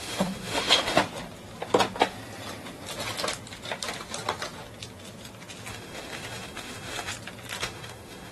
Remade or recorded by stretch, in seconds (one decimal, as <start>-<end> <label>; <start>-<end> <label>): 0.0-1.0 remade; 1.0-5.7 recorded; 5.7-7.1 remade; 7.1-7.6 recorded; 7.6-8.3 remade